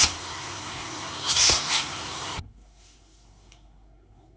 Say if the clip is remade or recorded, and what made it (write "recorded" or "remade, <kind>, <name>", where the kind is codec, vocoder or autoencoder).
remade, codec, SNAC